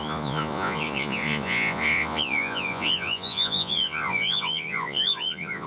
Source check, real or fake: fake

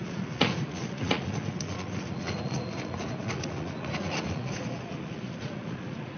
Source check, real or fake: fake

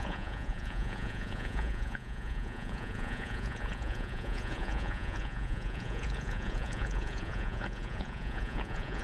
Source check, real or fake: fake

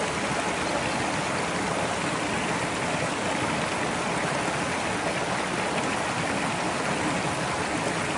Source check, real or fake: real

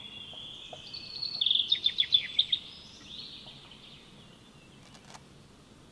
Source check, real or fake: real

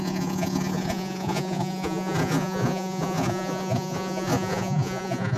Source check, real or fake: fake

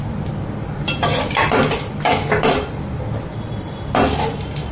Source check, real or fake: real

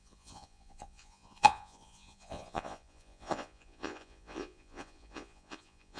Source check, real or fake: fake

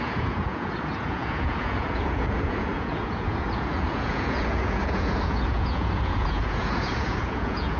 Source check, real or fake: fake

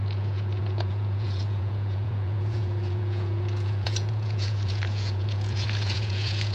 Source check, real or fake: fake